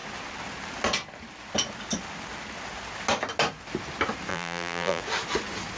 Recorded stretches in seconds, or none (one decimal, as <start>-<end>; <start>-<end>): 0.0-4.3; 5.0-5.8

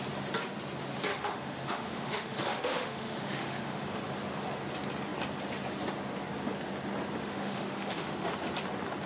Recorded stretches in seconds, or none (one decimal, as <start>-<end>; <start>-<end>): 0.0-1.1; 4.1-7.2; 8.3-9.1

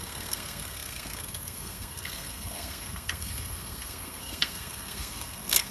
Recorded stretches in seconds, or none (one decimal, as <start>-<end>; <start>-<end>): none

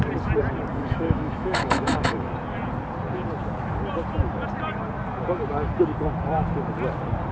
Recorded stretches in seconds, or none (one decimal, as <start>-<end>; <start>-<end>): 0.0-0.7; 2.3-7.3

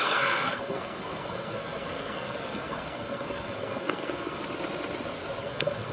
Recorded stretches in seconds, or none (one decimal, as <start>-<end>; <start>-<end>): 4.4-5.4

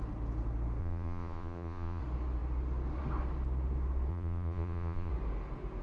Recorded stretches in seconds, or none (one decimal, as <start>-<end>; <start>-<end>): 0.0-0.8; 2.0-4.1; 5.1-5.8

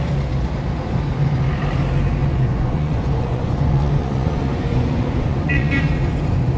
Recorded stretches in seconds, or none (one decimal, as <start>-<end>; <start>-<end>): 0.0-2.2; 5.8-6.6